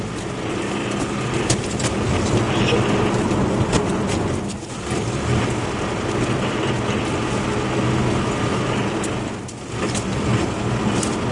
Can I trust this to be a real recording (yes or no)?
yes